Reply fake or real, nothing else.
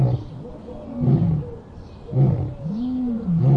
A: real